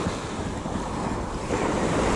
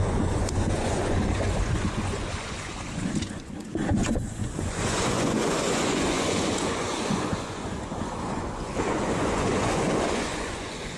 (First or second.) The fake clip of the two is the second